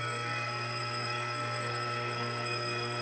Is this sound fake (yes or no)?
yes